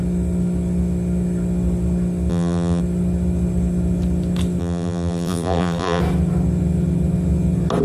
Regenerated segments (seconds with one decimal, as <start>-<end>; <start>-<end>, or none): 2.3-2.8; 4.6-6.0